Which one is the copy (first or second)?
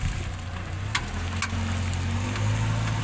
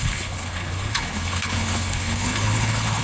second